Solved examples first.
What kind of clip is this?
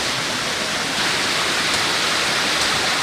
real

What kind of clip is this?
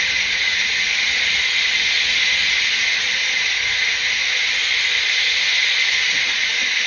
real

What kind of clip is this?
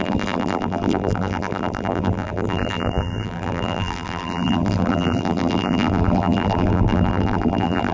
fake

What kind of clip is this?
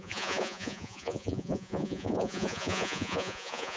fake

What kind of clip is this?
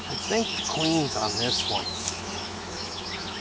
fake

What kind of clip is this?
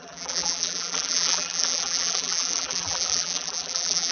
fake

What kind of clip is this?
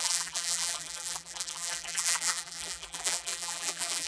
fake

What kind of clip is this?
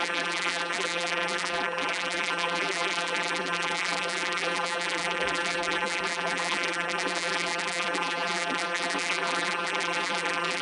fake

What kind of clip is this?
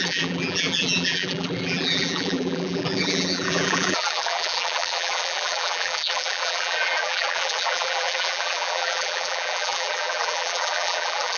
fake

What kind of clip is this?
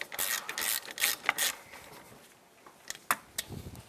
real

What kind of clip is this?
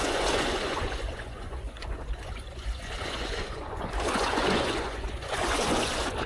fake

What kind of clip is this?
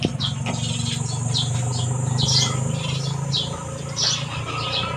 real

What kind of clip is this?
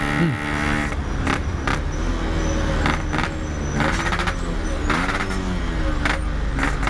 real